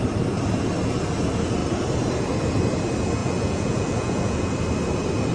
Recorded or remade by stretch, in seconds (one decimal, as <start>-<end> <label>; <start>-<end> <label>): 0.0-3.2 recorded; 3.2-4.5 remade; 4.5-5.3 recorded